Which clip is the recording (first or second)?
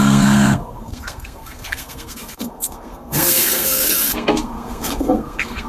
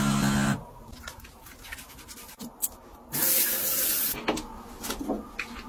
second